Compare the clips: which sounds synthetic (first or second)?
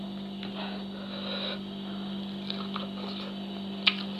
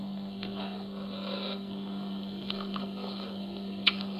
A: second